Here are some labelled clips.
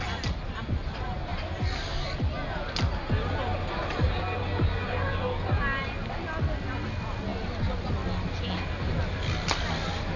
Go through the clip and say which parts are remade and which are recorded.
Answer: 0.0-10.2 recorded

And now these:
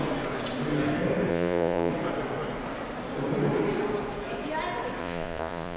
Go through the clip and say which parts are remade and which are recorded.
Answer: 0.0-1.3 recorded; 1.3-1.9 remade; 1.9-5.0 recorded; 5.0-5.8 remade

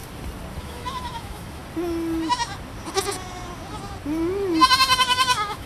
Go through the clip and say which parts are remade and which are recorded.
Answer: 0.0-0.6 recorded; 0.6-1.6 remade; 1.6-5.0 recorded; 5.0-5.7 remade

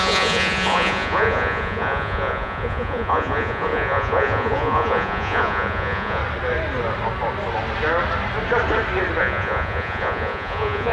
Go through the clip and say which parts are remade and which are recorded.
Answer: 0.0-6.2 remade; 6.2-9.2 recorded; 9.2-10.9 remade

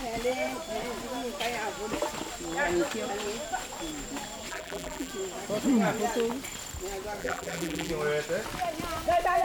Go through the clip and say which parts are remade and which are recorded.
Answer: 0.0-4.5 recorded; 4.5-5.1 remade; 5.1-7.2 recorded; 7.2-7.9 remade; 7.9-9.4 recorded

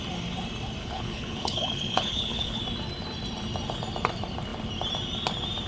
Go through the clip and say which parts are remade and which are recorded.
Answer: 0.0-0.8 recorded; 0.8-2.6 remade; 2.6-5.7 recorded

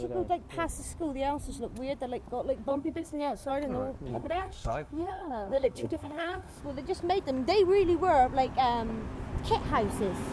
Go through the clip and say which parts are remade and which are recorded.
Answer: 0.0-2.7 recorded; 2.7-3.5 remade; 3.5-4.1 recorded; 4.1-6.6 remade; 6.6-10.3 recorded